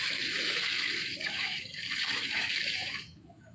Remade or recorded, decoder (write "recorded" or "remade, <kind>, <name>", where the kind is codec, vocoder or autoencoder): remade, autoencoder, DAC-VAE